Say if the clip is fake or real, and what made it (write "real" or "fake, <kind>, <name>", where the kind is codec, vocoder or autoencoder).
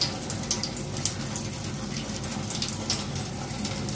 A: real